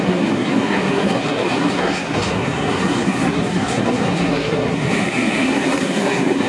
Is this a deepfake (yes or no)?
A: yes